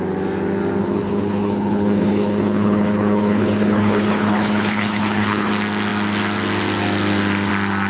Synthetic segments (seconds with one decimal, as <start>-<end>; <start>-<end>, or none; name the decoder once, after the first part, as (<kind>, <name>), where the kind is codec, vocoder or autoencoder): 0.8-5.5 (codec, HILCodec)